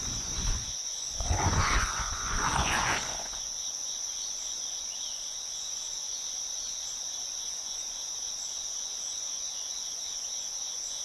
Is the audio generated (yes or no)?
yes